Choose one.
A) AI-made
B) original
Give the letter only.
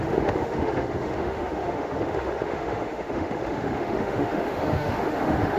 A